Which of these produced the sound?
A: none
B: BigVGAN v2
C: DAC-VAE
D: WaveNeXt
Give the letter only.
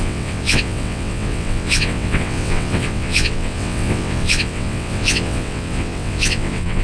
D